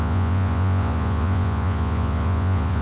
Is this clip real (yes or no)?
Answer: no